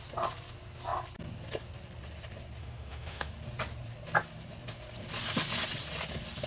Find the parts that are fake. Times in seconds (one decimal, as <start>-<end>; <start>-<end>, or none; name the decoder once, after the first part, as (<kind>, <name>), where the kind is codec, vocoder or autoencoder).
2.6-3.3 (autoencoder, DAC-VAE)